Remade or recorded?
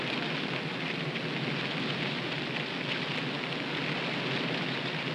recorded